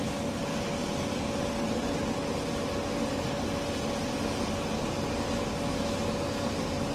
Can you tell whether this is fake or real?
real